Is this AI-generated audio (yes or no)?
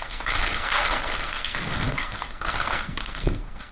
yes